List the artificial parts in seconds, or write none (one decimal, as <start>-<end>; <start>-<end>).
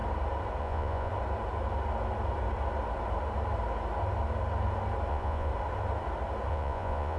0.6-1.1; 5.1-5.5; 6.5-7.2